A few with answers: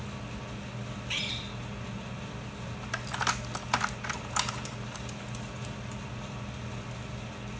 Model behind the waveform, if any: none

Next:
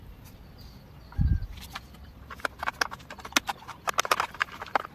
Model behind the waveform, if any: none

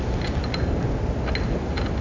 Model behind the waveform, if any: none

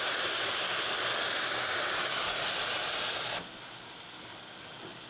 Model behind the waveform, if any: none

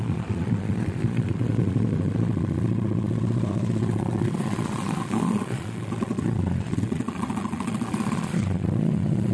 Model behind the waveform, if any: vocoder, Vocos